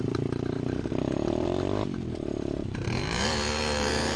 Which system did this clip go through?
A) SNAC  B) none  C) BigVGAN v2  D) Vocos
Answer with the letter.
C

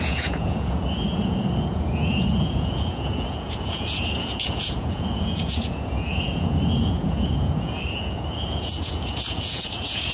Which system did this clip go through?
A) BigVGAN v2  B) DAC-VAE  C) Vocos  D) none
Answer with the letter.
C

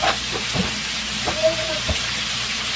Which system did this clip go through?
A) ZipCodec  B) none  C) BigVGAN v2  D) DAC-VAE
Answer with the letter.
B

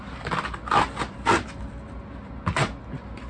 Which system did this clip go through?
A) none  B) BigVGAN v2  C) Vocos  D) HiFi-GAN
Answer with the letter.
A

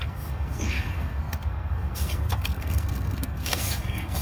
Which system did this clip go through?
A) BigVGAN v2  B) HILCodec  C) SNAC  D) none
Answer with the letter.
C